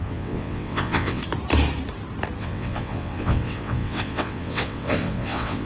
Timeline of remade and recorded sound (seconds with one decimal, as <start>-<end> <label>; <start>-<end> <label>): 0.0-1.2 remade; 1.2-2.4 recorded; 2.4-5.7 remade